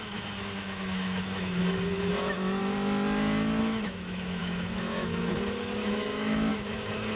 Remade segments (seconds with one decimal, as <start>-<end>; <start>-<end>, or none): 0.0-1.6; 2.1-2.6; 3.6-7.2